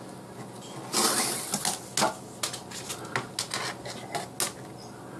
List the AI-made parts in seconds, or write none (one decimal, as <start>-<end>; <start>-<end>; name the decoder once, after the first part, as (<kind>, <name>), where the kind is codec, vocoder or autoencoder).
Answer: none

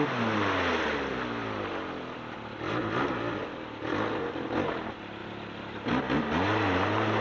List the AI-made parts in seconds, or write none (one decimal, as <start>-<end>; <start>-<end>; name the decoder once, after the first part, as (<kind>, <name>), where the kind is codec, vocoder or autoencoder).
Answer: none

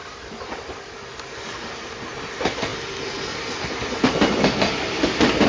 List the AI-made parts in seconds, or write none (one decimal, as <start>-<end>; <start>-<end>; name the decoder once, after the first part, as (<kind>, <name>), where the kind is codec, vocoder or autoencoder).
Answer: none

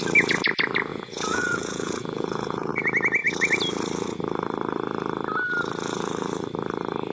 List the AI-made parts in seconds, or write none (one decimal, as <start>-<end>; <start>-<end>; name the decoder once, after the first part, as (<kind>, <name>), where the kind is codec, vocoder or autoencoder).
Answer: 0.9-2.7 (vocoder, Vocos)

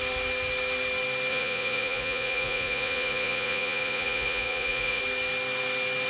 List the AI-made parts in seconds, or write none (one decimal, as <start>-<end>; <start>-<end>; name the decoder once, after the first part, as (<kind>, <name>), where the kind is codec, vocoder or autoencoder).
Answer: 1.3-5.0 (vocoder, Vocos)

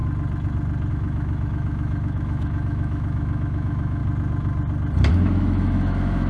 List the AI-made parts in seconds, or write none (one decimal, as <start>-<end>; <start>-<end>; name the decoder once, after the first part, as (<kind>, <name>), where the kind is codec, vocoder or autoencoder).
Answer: 0.9-4.0 (autoencoder, DAC-VAE); 5.1-6.3

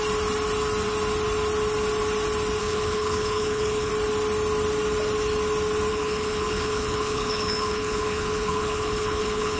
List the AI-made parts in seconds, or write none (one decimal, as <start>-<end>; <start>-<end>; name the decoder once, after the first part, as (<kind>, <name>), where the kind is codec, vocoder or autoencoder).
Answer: 2.6-3.9 (codec, HILCodec); 5.9-9.6